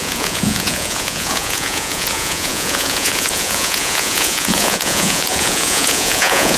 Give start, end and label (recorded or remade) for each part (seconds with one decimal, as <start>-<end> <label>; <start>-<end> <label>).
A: 0.0-6.6 remade

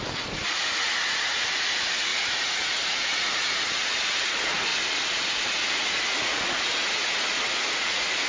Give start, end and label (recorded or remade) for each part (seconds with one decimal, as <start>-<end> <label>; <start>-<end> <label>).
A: 0.0-4.7 remade; 4.7-5.7 recorded; 5.7-8.3 remade

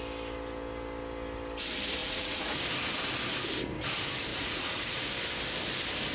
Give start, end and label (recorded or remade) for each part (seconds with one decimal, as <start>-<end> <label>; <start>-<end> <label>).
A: 0.0-2.0 recorded; 2.0-2.6 remade; 2.6-4.3 recorded; 4.3-5.1 remade; 5.1-6.1 recorded

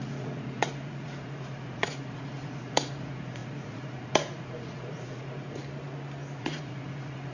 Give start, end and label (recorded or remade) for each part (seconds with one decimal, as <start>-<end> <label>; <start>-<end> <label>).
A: 0.0-5.6 remade; 5.6-6.4 recorded; 6.4-7.3 remade